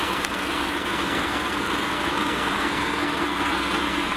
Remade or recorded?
remade